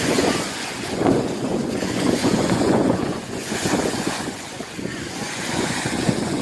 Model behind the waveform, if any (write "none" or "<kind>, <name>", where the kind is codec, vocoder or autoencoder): vocoder, Vocos